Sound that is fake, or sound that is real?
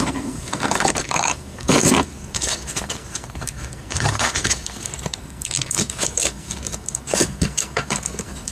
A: fake